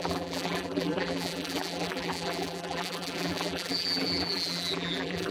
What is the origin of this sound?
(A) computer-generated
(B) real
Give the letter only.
A